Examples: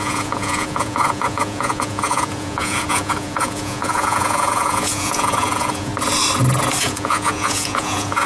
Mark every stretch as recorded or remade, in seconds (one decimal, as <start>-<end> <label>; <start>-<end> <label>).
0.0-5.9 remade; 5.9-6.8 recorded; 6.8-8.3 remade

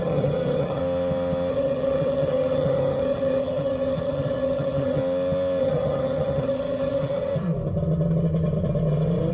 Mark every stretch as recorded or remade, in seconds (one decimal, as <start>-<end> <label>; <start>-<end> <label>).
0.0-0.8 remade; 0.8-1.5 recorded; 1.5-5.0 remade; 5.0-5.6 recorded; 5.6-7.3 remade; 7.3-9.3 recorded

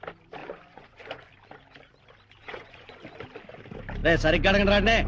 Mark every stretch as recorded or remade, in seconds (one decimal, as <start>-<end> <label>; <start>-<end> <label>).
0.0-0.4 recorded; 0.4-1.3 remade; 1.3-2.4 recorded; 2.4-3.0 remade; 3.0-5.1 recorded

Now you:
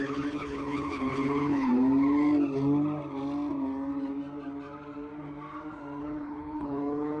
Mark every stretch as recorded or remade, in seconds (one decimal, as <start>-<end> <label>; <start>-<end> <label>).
0.0-1.7 remade; 1.7-6.0 recorded; 6.0-7.2 remade

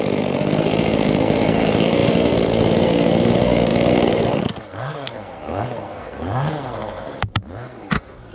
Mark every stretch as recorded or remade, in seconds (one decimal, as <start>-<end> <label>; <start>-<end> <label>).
0.0-8.3 remade

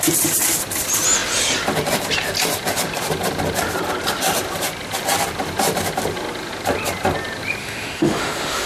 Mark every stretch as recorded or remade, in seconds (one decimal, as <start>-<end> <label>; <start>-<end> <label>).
0.0-7.6 recorded; 7.6-8.7 remade